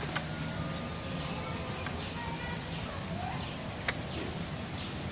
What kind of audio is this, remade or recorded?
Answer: recorded